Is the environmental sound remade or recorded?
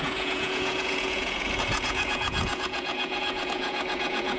remade